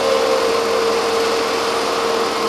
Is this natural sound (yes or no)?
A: yes